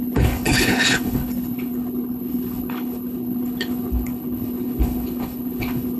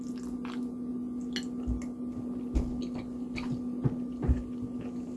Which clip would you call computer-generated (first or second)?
first